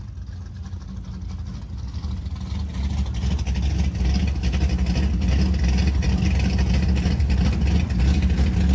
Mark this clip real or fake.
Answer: real